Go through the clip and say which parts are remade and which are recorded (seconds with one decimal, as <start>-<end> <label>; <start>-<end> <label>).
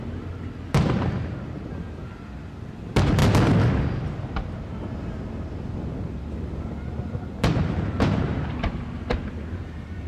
0.0-10.1 recorded